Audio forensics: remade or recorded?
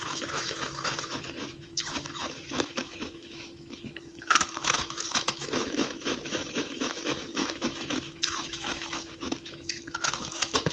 remade